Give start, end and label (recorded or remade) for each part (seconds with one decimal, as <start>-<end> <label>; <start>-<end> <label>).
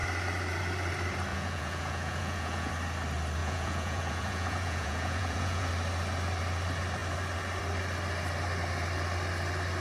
0.0-1.3 recorded; 1.3-2.7 remade; 2.7-3.4 recorded; 3.4-5.7 remade; 5.7-9.8 recorded